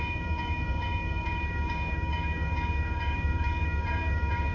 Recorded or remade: remade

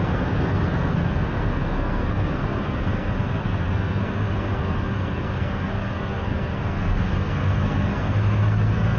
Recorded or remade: remade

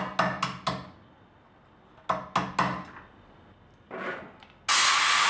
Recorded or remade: recorded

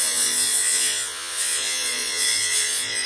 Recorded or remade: remade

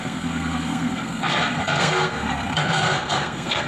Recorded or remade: remade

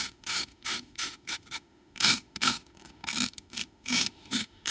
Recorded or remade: remade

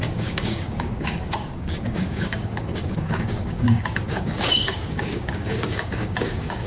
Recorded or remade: remade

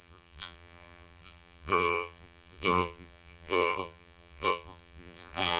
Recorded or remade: remade